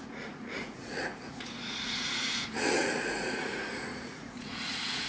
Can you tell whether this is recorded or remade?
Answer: remade